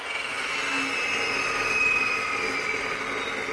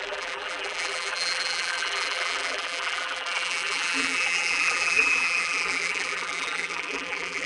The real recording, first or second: first